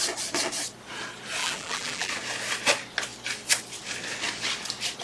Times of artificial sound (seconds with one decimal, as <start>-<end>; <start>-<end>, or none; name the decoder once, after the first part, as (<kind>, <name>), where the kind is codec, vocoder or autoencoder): 1.4-2.1 (vocoder, BigVGAN v2)